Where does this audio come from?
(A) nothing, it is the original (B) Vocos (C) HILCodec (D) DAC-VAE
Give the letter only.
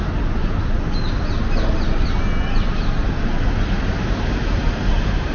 A